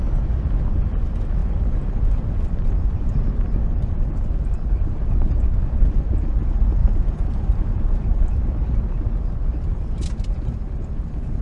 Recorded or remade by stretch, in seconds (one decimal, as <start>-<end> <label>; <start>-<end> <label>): 0.0-6.8 recorded; 6.8-7.9 remade; 7.9-11.4 recorded